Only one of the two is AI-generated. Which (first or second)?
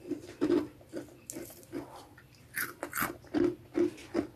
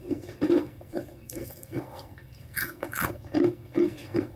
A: second